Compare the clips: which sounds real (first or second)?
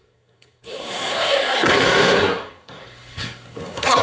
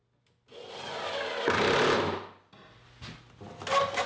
second